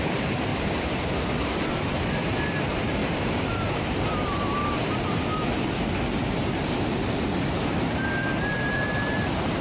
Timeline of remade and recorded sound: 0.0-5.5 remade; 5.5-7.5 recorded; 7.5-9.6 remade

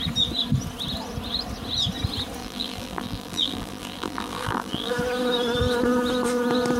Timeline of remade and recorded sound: 0.0-2.4 recorded; 2.4-4.9 remade; 4.9-6.8 recorded

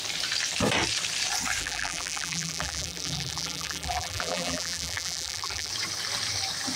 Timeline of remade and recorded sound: 0.0-1.6 recorded; 1.6-5.7 remade; 5.7-6.8 recorded

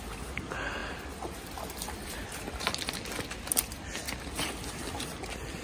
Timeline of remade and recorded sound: 0.0-0.8 recorded; 0.8-2.8 remade; 2.8-5.6 recorded

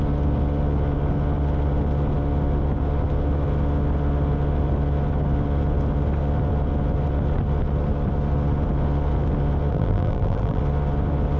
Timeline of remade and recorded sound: 0.0-9.7 recorded; 9.7-10.6 remade; 10.6-11.4 recorded